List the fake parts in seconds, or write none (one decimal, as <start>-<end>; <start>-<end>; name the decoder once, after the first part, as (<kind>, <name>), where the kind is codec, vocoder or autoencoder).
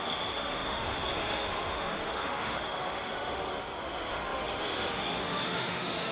0.0-6.1 (autoencoder, DAC-VAE)